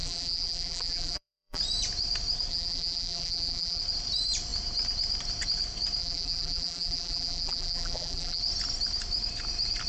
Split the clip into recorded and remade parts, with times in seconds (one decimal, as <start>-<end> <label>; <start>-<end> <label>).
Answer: 0.0-1.6 remade; 1.6-2.5 recorded; 2.5-3.8 remade; 3.8-6.0 recorded; 6.0-8.4 remade; 8.4-9.9 recorded